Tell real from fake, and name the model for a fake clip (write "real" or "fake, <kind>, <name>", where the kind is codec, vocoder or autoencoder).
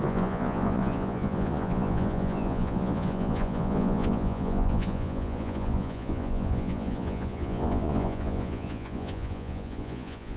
fake, vocoder, Vocos